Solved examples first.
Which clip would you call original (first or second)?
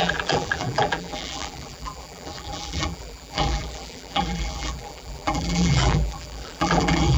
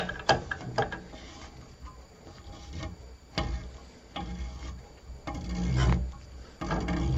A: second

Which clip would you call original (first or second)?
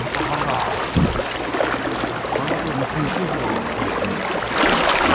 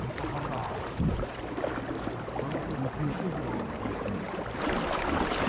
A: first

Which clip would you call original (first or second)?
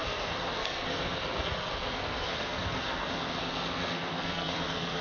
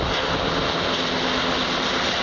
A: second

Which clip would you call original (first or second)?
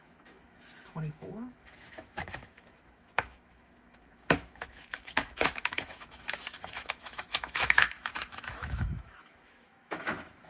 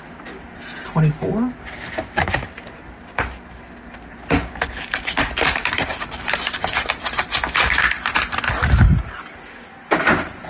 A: second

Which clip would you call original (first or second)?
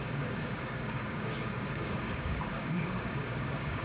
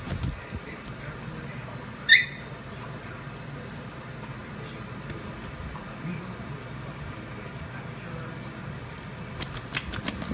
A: second